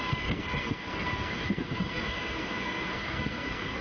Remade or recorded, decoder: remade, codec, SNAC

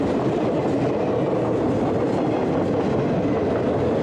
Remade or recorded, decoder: recorded